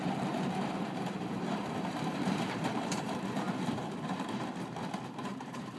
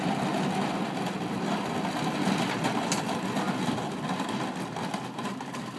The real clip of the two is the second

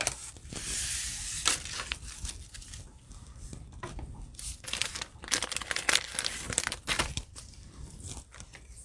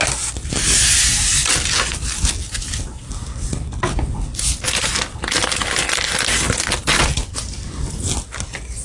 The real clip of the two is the second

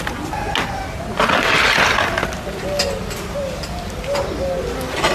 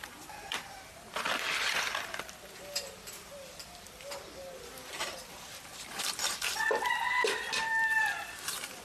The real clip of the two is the first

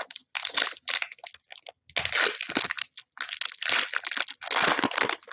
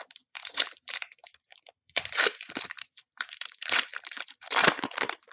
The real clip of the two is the first